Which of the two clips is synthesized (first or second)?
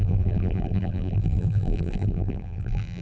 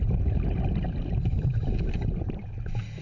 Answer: first